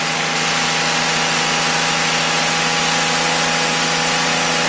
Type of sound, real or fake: real